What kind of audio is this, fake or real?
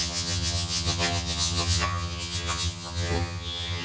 fake